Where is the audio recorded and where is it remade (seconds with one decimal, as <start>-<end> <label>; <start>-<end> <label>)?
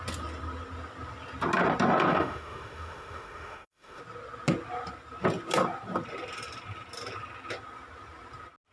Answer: 0.0-2.1 recorded; 2.1-4.0 remade; 4.0-8.7 recorded